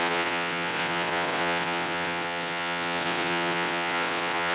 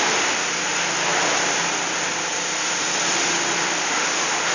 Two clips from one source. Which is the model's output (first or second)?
first